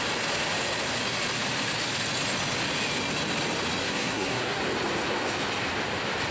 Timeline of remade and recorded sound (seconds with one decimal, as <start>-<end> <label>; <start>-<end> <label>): 0.0-3.8 recorded; 3.8-4.6 remade; 4.6-6.3 recorded